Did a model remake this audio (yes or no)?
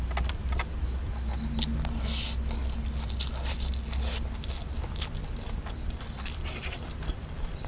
no